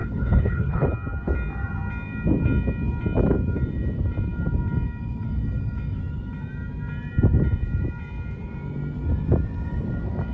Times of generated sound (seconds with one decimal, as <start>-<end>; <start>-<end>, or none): 0.0-0.9